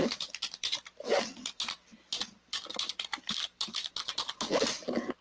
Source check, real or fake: fake